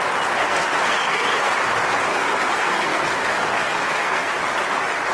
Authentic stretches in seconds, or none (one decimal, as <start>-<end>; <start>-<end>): 0.0-0.4; 1.5-2.1; 4.3-5.1

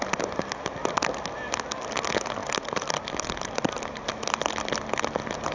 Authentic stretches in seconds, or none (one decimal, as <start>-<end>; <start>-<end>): 0.0-5.5

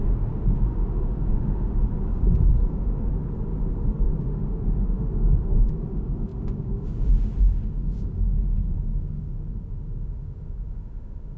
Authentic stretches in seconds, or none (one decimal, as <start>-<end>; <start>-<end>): 1.9-2.7; 3.1-4.2

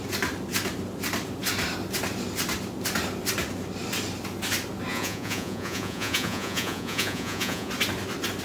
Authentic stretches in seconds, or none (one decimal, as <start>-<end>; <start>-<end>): 0.0-4.9; 7.7-8.4